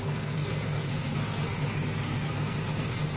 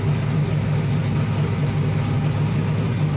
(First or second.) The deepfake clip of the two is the first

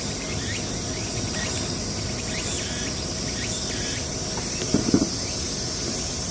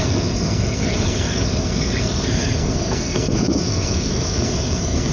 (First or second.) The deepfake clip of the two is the second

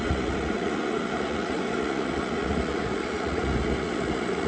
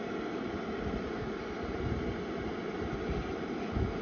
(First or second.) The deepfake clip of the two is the first